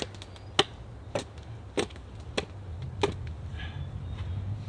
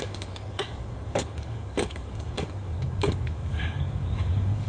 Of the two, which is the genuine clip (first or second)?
first